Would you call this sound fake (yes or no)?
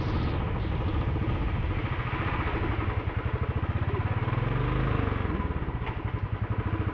no